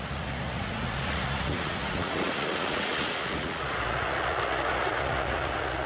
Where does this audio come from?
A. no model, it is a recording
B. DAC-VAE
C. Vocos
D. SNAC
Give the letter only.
C